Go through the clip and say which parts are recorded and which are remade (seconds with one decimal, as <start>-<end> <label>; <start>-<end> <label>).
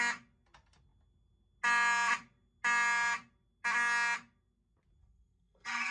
0.0-5.0 recorded; 5.0-5.9 remade